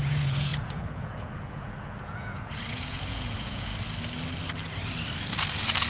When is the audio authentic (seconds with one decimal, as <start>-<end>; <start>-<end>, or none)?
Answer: 3.7-5.9